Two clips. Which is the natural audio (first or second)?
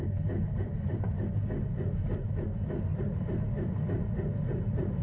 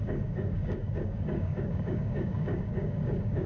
first